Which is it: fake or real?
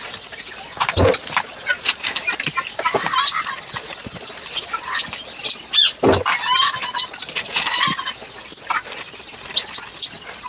real